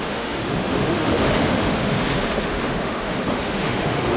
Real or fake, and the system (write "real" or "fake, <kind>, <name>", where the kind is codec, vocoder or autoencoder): fake, autoencoder, DAC-VAE